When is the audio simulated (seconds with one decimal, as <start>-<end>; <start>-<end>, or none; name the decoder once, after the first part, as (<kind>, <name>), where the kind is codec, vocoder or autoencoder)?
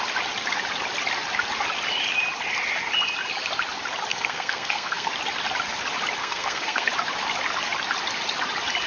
4.1-5.1 (codec, SNAC); 6.2-6.9